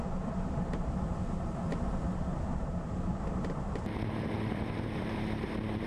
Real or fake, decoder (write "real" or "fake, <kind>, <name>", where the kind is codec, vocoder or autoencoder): fake, vocoder, BigVGAN v2